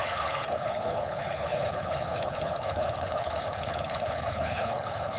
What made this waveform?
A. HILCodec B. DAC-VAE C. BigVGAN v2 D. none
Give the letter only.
A